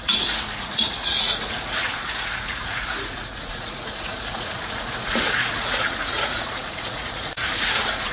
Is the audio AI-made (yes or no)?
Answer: yes